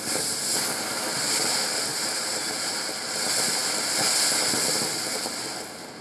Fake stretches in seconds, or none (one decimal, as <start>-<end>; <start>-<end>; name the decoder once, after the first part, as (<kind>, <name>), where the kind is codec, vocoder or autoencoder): 1.9-2.9 (vocoder, BigVGAN v2)